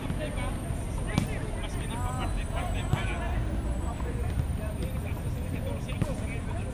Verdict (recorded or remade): recorded